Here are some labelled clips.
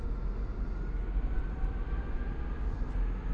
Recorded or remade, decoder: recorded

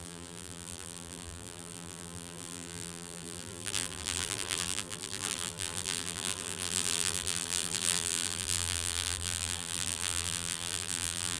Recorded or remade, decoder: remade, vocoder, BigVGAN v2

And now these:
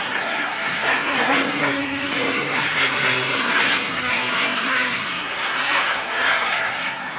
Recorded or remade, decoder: remade, codec, SNAC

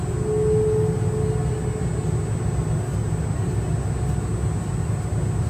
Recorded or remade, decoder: recorded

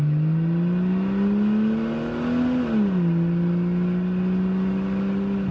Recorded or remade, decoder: recorded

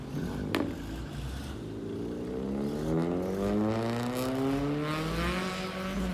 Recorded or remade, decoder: recorded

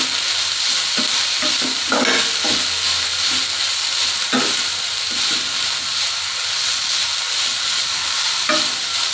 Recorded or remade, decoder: recorded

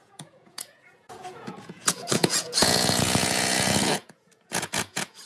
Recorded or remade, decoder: remade, vocoder, Vocos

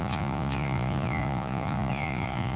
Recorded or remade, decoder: remade, vocoder, Vocos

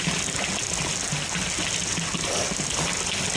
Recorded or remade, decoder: recorded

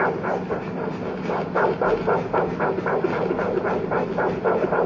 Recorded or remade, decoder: recorded